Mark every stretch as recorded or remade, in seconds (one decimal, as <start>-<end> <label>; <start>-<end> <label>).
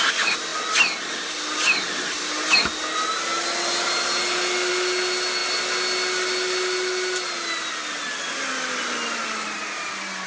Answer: 0.0-10.3 recorded